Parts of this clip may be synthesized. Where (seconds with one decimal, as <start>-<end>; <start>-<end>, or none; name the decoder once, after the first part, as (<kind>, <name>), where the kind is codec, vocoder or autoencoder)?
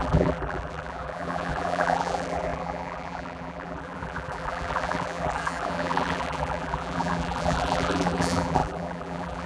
0.0-9.5 (vocoder, BigVGAN v2)